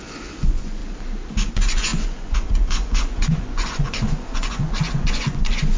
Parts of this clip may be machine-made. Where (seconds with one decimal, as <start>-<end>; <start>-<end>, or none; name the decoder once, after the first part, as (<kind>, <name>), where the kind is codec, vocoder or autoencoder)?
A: 0.0-0.8 (vocoder, Vocos); 1.5-5.8